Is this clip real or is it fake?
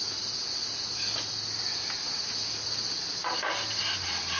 real